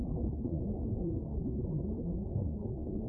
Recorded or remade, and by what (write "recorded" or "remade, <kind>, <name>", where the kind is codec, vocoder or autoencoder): remade, codec, SNAC